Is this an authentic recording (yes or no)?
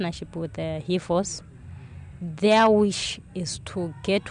yes